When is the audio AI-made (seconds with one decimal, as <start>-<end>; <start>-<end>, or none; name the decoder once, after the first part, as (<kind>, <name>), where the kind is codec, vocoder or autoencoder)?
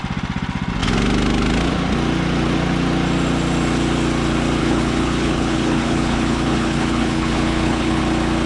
4.6-8.0 (codec, HILCodec)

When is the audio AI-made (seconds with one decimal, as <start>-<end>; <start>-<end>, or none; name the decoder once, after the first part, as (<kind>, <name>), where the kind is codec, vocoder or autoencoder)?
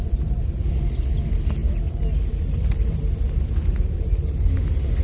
none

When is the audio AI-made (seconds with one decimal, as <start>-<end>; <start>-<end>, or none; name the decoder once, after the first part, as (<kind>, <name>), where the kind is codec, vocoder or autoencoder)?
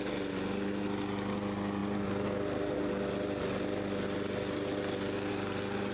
none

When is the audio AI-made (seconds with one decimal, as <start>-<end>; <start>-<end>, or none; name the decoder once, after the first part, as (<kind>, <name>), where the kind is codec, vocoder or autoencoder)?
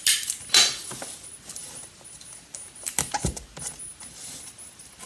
none